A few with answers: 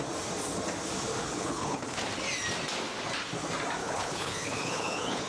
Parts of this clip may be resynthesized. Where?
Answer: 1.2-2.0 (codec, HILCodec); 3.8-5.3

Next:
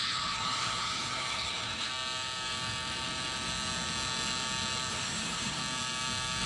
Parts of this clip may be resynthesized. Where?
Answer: 0.0-1.9 (codec, HILCodec); 4.9-5.6

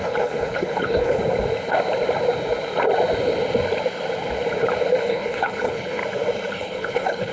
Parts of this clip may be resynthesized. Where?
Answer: 0.0-1.2 (codec, HILCodec); 5.1-6.0; 6.5-7.3

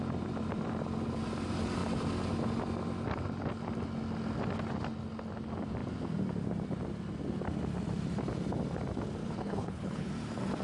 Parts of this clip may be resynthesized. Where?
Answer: 9.2-10.1 (codec, HILCodec)